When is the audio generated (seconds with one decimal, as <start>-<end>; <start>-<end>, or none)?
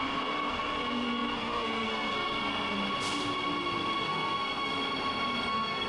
0.0-2.7; 4.0-4.7; 5.5-5.9